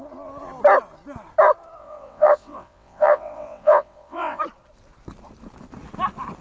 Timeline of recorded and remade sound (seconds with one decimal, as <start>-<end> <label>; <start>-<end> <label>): 0.0-1.8 recorded; 1.8-4.4 remade; 4.4-6.4 recorded